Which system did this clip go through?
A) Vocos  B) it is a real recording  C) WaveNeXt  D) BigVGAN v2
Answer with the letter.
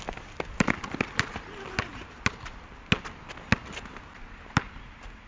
B